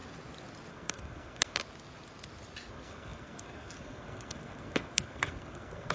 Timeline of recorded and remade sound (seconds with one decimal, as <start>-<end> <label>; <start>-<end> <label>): 0.0-0.7 recorded; 0.7-1.6 remade; 1.6-2.7 recorded; 2.7-5.9 remade